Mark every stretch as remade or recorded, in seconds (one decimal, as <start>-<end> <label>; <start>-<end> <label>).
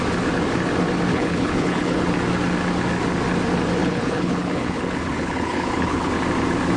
0.0-1.1 recorded; 1.1-2.0 remade; 2.0-3.8 recorded; 3.8-6.1 remade; 6.1-6.8 recorded